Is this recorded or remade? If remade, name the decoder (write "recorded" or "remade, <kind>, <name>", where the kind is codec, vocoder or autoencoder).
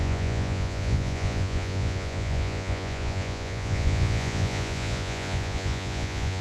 remade, vocoder, Vocos